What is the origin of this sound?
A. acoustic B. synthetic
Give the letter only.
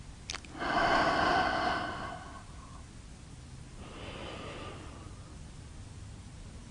A